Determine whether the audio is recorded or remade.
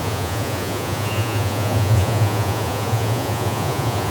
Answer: remade